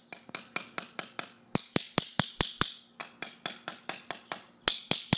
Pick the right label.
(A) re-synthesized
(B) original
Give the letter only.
B